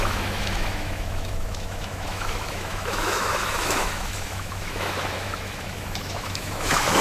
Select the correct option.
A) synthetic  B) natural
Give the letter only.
A